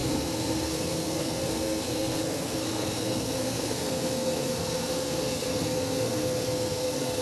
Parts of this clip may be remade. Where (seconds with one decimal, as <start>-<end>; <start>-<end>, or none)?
0.0-7.2